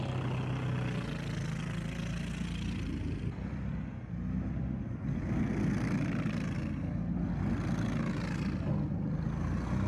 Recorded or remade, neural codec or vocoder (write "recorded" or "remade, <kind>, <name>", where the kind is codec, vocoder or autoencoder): recorded